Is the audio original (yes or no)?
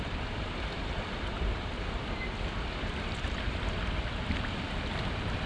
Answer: no